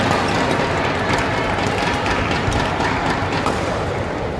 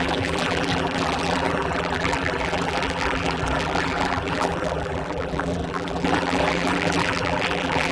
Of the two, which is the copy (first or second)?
second